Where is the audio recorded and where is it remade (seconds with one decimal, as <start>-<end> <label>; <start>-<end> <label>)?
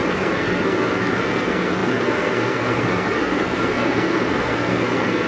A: 0.0-5.3 remade